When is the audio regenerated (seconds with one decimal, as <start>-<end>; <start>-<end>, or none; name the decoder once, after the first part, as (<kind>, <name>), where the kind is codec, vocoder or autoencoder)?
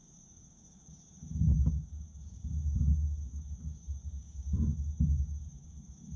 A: 0.0-4.7 (codec, DAC); 5.2-6.2